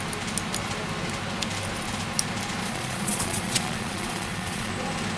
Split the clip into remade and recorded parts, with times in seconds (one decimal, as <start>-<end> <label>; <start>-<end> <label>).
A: 0.0-2.6 recorded; 2.6-4.7 remade; 4.7-5.2 recorded